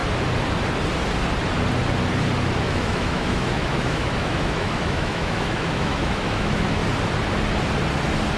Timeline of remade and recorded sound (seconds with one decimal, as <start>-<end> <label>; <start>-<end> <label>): 0.0-2.6 recorded; 2.6-6.8 remade; 6.8-8.4 recorded

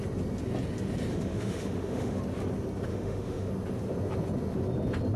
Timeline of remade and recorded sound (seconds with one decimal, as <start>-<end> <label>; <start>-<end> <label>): 0.0-1.1 recorded; 1.1-2.2 remade; 2.2-2.9 recorded; 2.9-3.5 remade; 3.5-5.2 recorded

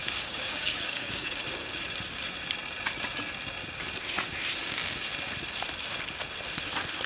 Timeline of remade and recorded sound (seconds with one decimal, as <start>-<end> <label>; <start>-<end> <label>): 0.0-1.4 remade; 1.4-7.1 recorded

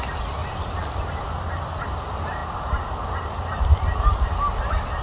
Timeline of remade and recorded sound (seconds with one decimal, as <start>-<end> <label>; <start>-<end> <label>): 0.0-5.0 recorded

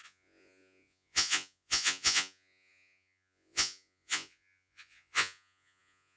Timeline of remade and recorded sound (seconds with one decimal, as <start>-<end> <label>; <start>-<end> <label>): 0.0-6.2 remade

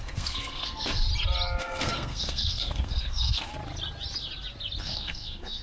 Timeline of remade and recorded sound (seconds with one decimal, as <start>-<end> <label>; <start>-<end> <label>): 0.0-1.1 remade; 1.1-1.6 recorded; 1.6-3.5 remade; 3.5-4.8 recorded; 4.8-5.6 remade